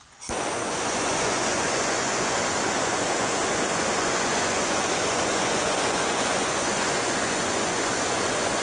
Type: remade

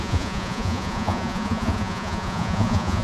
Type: remade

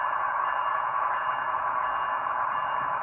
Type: remade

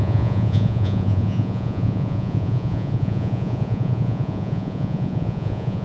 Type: remade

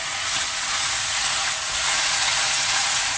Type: remade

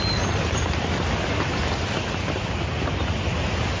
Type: recorded